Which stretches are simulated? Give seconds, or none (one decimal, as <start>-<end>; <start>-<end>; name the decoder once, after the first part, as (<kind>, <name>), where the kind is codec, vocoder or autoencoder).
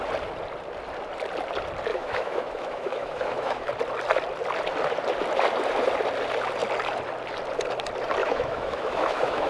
1.9-3.7 (autoencoder, DAC-VAE); 8.2-9.5